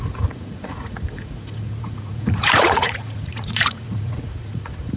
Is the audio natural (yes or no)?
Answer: no